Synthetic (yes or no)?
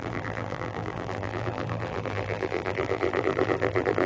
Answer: yes